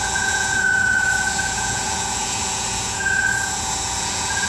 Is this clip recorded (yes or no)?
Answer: no